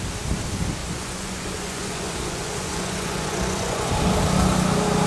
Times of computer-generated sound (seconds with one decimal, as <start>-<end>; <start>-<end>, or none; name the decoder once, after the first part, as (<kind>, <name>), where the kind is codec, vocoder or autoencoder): 0.8-3.9 (vocoder, Vocos)